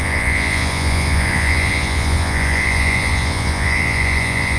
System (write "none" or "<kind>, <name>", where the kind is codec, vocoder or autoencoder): vocoder, Vocos